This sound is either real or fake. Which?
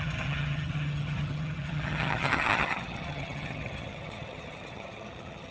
fake